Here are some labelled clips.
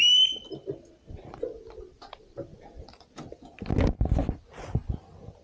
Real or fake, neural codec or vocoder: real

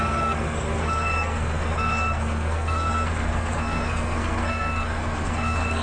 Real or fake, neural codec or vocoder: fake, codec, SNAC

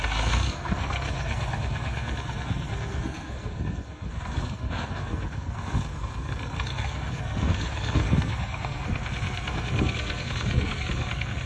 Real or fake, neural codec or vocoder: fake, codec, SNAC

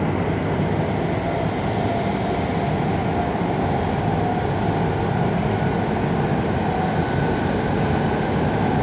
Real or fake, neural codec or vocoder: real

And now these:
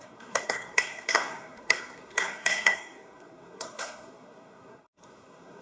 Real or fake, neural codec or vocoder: fake, codec, SNAC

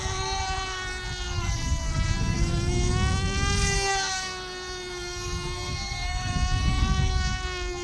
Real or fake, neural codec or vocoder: fake, codec, SNAC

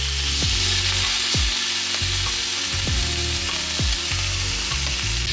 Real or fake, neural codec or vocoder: real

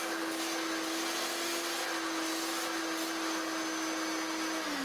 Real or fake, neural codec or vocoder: real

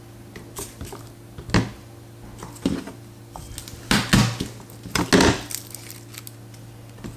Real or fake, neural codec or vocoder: real